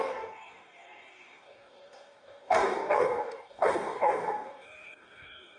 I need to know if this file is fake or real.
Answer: fake